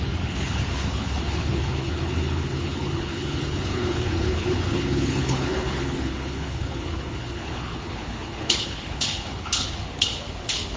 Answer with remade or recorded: remade